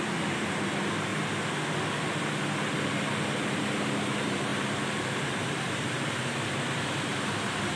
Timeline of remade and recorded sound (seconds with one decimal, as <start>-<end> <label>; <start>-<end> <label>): 0.0-1.1 remade; 1.1-3.1 recorded; 3.1-7.8 remade